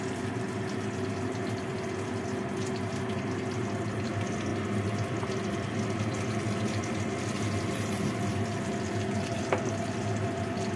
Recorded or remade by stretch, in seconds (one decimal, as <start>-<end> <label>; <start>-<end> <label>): 0.0-10.8 recorded